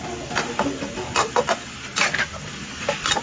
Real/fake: real